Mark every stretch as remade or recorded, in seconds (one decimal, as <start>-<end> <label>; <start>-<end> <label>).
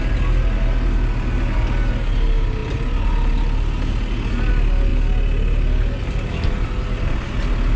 0.0-7.8 recorded